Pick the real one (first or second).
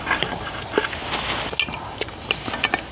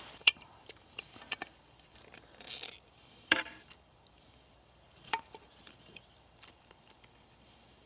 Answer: first